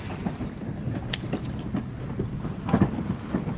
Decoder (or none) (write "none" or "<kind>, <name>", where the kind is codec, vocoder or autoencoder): none